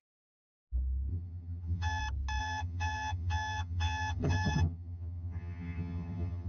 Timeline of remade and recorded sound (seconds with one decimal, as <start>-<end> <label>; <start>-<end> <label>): 0.0-1.1 recorded; 1.1-2.0 remade; 2.0-2.4 recorded; 2.4-6.5 remade